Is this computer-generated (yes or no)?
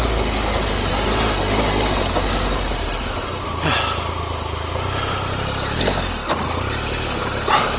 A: no